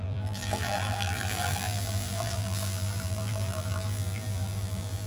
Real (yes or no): no